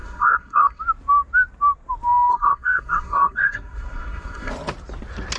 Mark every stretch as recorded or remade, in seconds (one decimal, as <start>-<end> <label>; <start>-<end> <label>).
0.0-0.8 remade; 0.8-2.3 recorded; 2.3-4.5 remade; 4.5-5.4 recorded